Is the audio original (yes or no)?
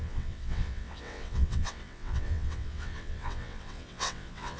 no